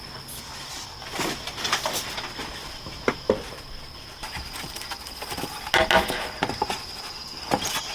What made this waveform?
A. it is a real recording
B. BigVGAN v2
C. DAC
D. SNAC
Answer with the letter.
A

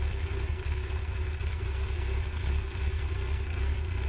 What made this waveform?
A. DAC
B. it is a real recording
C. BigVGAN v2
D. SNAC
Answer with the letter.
D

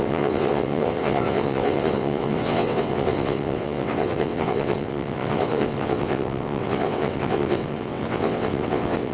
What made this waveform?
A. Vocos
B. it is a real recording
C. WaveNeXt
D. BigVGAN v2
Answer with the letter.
C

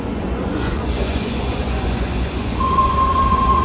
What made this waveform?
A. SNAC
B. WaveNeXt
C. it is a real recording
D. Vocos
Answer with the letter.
D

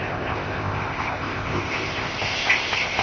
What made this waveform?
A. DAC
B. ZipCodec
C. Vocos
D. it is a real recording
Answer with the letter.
B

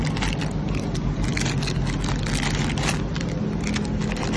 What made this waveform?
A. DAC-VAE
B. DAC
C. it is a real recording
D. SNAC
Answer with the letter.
C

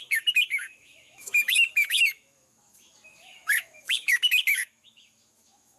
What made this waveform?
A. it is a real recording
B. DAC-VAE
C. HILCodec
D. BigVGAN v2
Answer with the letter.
B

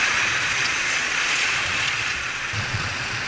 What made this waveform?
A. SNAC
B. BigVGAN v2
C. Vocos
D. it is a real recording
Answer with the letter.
C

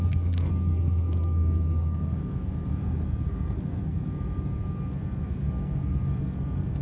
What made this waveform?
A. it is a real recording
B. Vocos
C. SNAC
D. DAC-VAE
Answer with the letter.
C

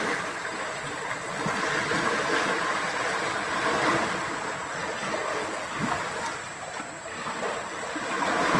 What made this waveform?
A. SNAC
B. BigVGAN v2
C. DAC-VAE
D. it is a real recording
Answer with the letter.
D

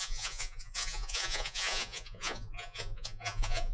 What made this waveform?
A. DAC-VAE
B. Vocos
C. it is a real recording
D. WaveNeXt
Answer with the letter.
B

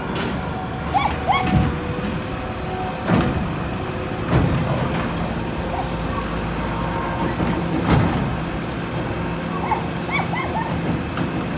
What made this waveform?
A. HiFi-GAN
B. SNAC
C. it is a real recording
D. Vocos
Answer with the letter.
C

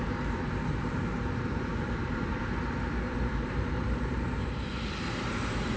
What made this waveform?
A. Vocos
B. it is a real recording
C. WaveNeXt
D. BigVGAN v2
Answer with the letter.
D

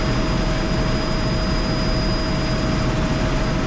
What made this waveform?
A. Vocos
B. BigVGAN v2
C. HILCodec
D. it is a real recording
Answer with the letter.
D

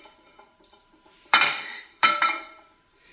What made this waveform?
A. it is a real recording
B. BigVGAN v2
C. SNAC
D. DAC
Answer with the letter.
B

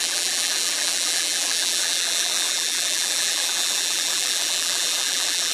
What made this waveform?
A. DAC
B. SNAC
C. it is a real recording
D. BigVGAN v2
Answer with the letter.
D